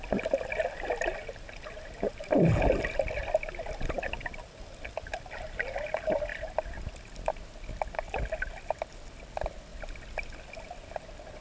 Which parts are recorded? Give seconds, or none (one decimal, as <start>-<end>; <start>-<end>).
0.0-11.4